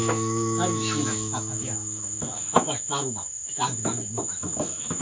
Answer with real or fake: fake